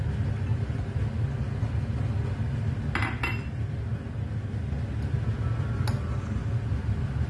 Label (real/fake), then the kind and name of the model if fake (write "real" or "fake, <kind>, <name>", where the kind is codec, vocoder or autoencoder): real